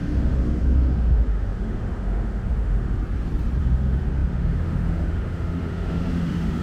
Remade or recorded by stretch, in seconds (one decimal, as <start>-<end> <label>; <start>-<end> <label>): 0.0-3.0 remade; 3.0-3.6 recorded; 3.6-6.6 remade